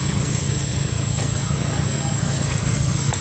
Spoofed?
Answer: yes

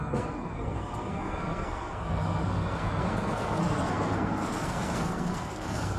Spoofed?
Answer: yes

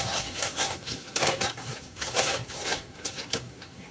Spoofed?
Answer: yes